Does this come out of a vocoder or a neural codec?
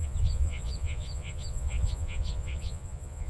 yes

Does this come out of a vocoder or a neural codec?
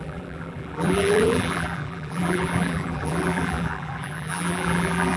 yes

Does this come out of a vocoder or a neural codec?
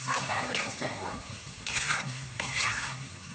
yes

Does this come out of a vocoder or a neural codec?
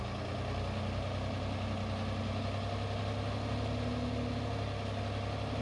no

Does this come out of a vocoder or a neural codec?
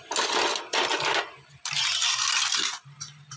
no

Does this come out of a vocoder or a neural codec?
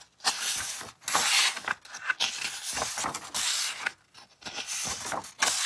no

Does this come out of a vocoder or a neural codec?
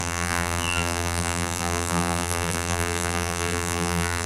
yes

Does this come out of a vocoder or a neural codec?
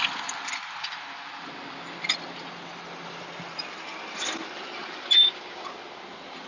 no